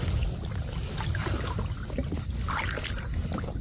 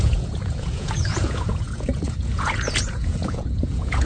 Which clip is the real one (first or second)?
first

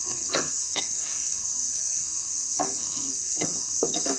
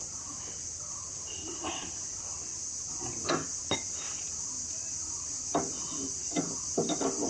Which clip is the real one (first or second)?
second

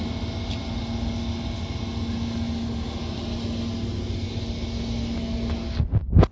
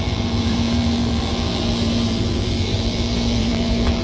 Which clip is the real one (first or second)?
first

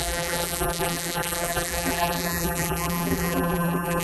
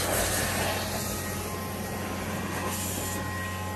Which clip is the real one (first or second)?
second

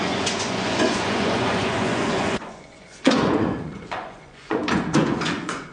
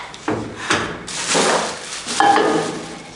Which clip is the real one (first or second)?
second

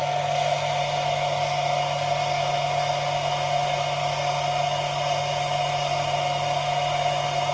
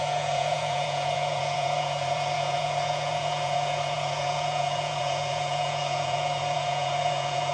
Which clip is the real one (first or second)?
first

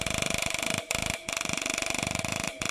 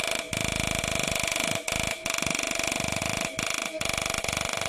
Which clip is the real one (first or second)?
second